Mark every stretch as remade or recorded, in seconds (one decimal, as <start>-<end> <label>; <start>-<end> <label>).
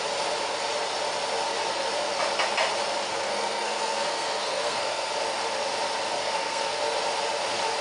0.0-3.1 recorded; 3.1-5.1 remade; 5.1-6.2 recorded; 6.2-6.8 remade; 6.8-7.8 recorded